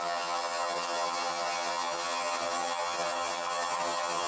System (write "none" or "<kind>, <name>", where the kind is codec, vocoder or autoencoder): vocoder, HiFi-GAN